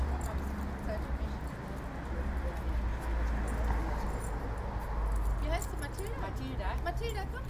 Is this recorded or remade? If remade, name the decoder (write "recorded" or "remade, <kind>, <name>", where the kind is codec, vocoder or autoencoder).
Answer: recorded